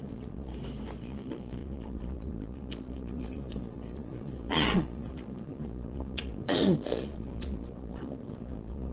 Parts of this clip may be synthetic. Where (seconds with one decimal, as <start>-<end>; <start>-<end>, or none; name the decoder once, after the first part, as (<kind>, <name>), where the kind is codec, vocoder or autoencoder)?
0.0-0.5 (vocoder, Vocos); 1.0-8.9